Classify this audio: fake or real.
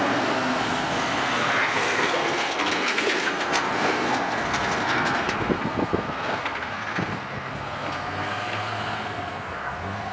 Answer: fake